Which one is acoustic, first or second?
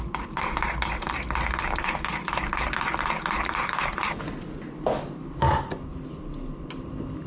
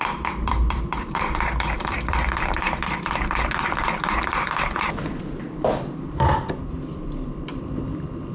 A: first